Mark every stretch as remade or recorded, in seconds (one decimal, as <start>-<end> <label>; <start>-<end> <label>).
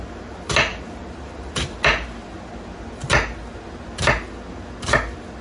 0.0-5.4 recorded